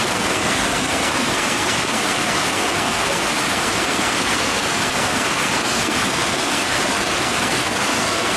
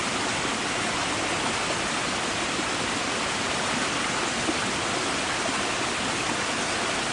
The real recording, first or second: second